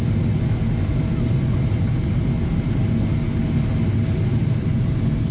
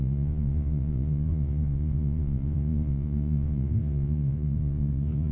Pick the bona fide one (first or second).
first